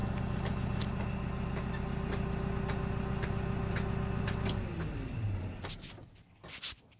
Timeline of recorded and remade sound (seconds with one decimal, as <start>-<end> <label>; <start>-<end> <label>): 0.0-7.0 recorded